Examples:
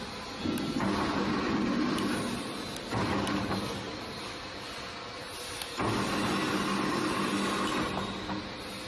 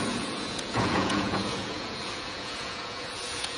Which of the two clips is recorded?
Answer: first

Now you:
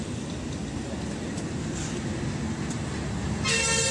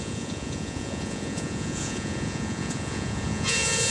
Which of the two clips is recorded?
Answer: first